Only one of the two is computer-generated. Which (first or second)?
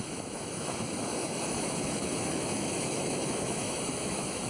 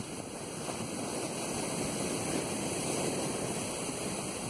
first